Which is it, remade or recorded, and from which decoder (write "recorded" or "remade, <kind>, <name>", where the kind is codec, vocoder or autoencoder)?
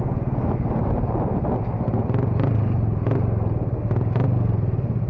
recorded